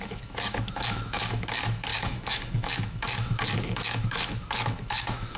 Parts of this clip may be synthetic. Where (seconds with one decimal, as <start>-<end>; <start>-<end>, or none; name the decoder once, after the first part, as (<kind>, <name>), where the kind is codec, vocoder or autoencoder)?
0.0-5.4 (autoencoder, DAC-VAE)